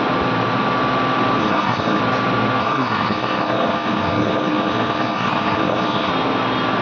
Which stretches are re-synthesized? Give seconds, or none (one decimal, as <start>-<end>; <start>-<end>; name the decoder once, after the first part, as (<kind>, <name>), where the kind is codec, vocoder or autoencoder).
1.4-2.0 (codec, SNAC); 2.6-6.1

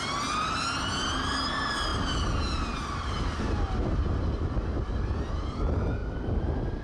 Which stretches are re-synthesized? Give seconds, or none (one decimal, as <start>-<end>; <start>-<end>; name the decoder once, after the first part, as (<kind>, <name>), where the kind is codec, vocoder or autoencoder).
none

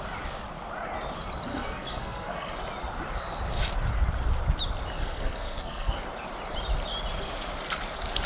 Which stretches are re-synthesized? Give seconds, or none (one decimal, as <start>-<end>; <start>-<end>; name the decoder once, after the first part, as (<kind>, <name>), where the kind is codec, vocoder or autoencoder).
1.5-2.6 (codec, SNAC); 5.0-6.0

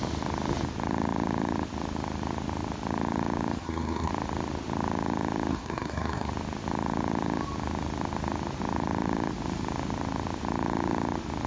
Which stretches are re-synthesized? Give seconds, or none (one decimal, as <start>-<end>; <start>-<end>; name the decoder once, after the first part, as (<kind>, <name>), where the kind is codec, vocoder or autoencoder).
3.6-4.1 (codec, SNAC); 5.5-6.3

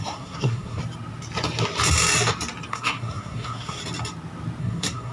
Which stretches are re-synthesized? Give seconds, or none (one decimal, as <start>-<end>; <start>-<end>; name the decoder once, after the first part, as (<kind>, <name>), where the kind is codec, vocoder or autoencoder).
0.0-0.8 (codec, SNAC); 2.7-3.8; 4.6-5.1

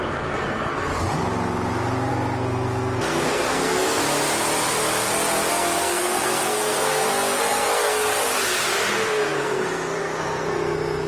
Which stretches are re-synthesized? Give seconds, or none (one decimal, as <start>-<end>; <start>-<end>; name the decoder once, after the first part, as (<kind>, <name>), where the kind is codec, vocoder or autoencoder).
0.0-0.9 (codec, SNAC); 2.1-4.0; 5.5-8.2; 8.9-11.1

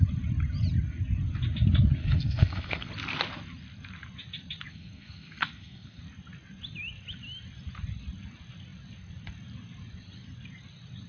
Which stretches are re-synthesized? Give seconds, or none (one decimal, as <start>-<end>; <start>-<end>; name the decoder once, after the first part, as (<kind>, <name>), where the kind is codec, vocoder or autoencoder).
2.0-2.9 (codec, SNAC); 4.7-6.0